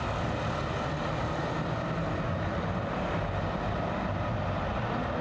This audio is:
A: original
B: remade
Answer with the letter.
A